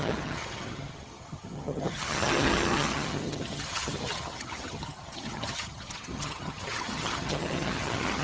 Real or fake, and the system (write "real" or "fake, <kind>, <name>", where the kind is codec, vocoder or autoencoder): fake, vocoder, HiFi-GAN